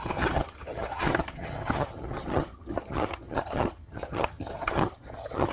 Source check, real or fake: fake